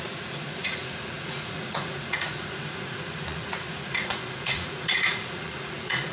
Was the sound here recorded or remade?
remade